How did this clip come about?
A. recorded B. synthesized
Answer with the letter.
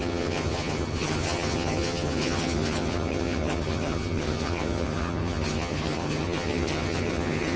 B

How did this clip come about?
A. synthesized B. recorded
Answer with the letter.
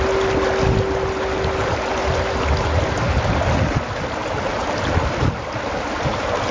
B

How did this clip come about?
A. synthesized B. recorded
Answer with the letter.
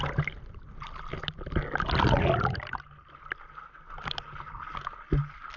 B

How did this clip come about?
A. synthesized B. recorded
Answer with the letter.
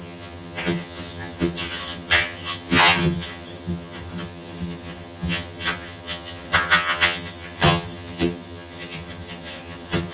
A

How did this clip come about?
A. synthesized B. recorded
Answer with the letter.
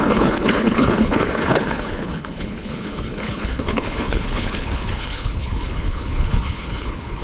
A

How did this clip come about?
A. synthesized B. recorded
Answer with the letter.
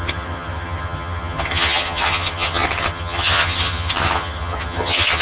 A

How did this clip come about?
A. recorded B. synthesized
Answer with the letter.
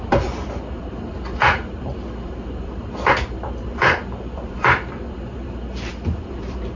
B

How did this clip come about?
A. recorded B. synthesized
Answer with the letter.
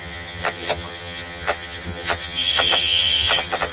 B